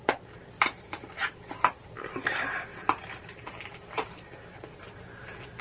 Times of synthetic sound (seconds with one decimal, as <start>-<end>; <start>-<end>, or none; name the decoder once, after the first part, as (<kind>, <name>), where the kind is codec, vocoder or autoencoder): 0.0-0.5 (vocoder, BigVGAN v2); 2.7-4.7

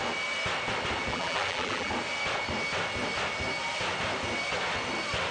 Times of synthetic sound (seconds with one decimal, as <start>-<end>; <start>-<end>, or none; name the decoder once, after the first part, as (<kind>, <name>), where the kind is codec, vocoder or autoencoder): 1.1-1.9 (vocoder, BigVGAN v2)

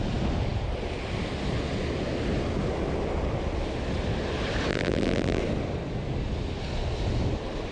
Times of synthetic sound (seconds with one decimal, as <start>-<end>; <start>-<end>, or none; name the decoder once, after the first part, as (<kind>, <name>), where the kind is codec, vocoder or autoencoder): 4.7-5.4 (vocoder, BigVGAN v2)

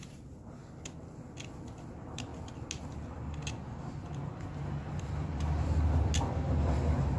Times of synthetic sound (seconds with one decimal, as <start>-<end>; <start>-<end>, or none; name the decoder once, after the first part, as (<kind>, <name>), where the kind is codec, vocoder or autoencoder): 0.0-0.6 (vocoder, BigVGAN v2); 1.9-2.3; 6.6-7.2